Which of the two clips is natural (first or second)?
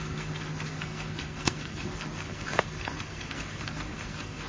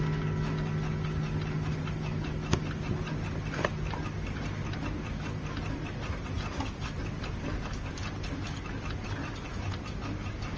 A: second